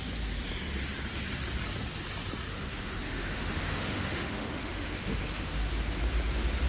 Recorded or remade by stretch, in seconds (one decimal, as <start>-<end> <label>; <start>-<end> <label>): 0.0-2.5 recorded; 2.5-5.7 remade; 5.7-6.7 recorded